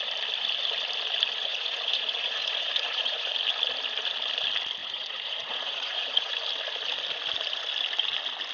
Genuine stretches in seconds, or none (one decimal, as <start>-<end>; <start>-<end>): 0.0-1.5; 3.3-4.8; 6.3-8.5